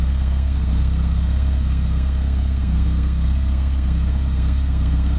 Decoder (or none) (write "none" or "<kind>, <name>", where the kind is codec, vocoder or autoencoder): codec, SNAC